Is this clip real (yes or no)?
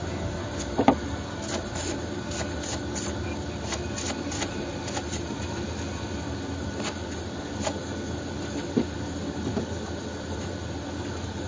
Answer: yes